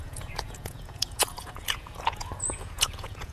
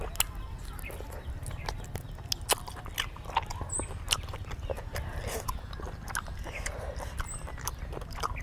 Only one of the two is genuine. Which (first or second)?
second